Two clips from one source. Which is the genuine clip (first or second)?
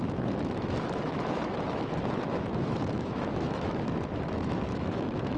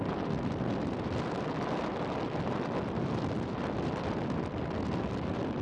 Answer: second